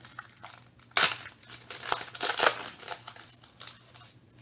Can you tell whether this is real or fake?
real